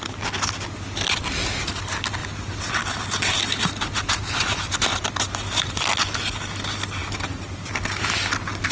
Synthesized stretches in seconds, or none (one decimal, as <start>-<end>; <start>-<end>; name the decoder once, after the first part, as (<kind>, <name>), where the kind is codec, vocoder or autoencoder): 7.0-7.7 (vocoder, BigVGAN v2)